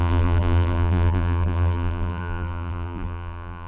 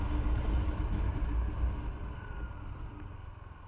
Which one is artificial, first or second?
first